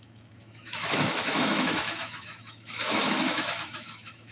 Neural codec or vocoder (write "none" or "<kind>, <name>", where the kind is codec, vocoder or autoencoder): autoencoder, DAC-VAE